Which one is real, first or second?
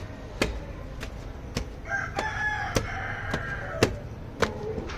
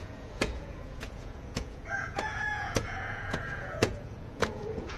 first